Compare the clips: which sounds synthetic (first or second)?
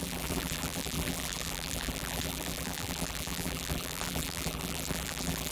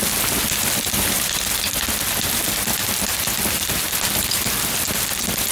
first